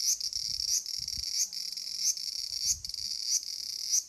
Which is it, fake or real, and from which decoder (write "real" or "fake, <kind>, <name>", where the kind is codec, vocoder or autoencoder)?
real